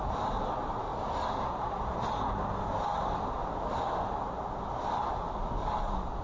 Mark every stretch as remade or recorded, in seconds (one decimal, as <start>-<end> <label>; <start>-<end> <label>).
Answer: 0.0-6.2 recorded

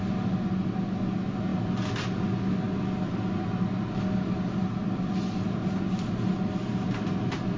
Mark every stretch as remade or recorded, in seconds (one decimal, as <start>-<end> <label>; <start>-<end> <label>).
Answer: 0.0-7.6 recorded

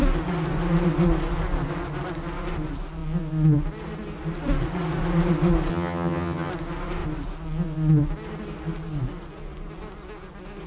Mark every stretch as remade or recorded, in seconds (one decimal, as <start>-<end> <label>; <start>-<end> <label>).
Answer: 0.0-5.7 recorded; 5.7-6.5 remade; 6.5-10.7 recorded

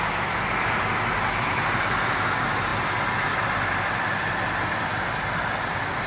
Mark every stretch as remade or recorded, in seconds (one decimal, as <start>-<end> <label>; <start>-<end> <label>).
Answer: 0.0-6.1 recorded

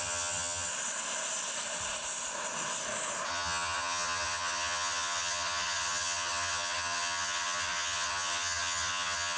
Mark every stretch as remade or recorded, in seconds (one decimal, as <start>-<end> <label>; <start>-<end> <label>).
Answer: 0.0-0.7 remade; 0.7-3.3 recorded; 3.3-9.4 remade

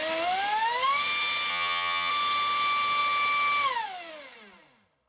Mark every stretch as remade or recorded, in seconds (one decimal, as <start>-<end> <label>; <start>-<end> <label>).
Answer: 0.0-1.5 recorded; 1.5-2.1 remade; 2.1-5.1 recorded

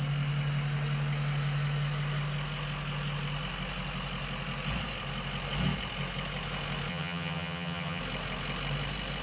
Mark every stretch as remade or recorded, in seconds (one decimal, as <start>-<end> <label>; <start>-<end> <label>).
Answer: 0.0-6.9 recorded; 6.9-8.0 remade; 8.0-9.2 recorded

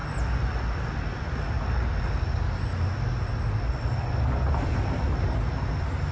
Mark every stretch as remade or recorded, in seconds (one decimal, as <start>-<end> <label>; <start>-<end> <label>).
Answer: 0.0-6.1 recorded